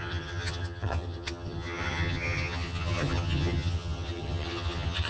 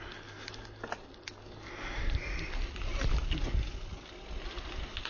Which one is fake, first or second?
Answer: first